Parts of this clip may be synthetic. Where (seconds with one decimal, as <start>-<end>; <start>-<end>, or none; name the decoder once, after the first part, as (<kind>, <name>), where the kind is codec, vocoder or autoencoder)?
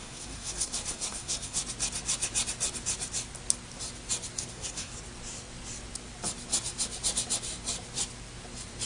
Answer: 0.0-1.6 (codec, SNAC); 4.5-4.9